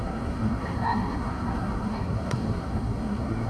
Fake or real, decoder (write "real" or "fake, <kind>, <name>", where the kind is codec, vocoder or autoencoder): fake, codec, SNAC